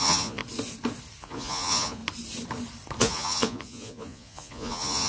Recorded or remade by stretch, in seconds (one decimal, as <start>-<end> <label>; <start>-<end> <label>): 0.0-0.4 remade; 0.4-1.2 recorded; 1.2-2.0 remade; 2.0-3.0 recorded; 3.0-5.1 remade